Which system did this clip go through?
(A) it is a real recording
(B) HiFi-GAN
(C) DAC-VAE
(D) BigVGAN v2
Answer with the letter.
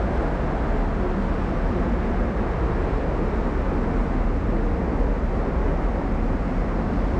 A